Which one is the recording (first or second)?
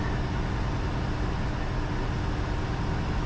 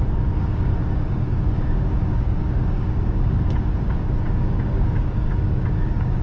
first